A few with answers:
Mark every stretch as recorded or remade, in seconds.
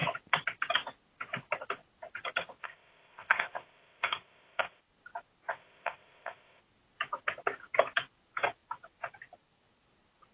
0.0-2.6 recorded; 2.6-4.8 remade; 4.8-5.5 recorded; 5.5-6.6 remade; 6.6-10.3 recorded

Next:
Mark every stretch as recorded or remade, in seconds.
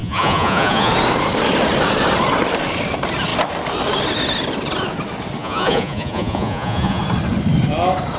0.0-0.9 remade; 0.9-5.4 recorded; 5.4-7.0 remade; 7.0-8.2 recorded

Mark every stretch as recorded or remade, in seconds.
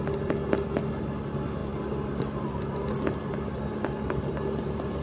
0.0-5.0 recorded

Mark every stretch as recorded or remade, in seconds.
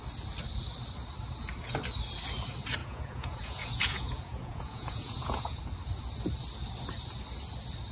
0.0-2.8 recorded; 2.8-5.6 remade; 5.6-7.9 recorded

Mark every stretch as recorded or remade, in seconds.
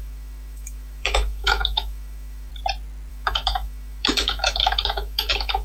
0.0-2.5 remade; 2.5-3.1 recorded; 3.1-5.6 remade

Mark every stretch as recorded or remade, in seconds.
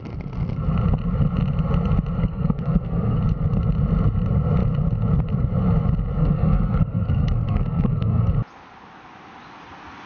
0.0-2.2 recorded; 2.2-3.2 remade; 3.2-6.2 recorded; 6.2-8.3 remade; 8.3-10.1 recorded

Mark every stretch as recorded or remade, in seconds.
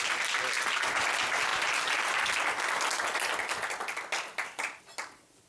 0.0-5.5 recorded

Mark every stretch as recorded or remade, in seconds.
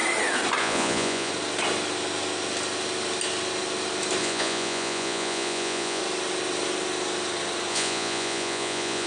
0.0-0.6 recorded; 0.6-1.3 remade; 1.3-4.2 recorded; 4.2-6.0 remade; 6.0-7.7 recorded; 7.7-9.1 remade